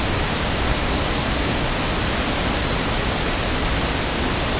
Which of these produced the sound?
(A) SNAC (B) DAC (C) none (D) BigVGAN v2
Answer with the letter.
C